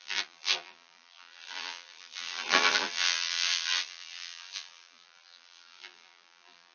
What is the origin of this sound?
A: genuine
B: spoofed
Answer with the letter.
B